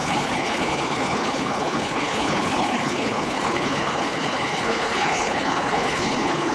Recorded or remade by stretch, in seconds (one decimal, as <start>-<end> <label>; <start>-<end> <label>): 0.0-6.5 remade